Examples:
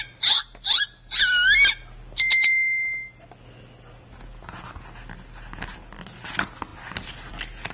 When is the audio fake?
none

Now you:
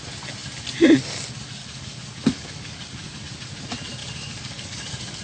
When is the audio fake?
1.6-3.2; 4.0-5.2

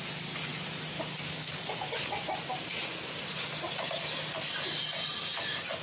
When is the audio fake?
none

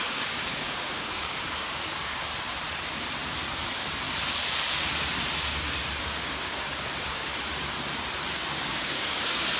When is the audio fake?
0.0-2.3; 6.0-7.3; 8.3-9.6